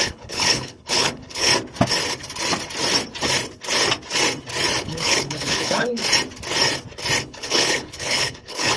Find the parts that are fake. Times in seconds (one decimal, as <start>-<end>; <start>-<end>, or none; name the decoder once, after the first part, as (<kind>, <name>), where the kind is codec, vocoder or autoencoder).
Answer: 0.0-1.5 (codec, HILCodec); 4.8-6.0; 7.2-8.8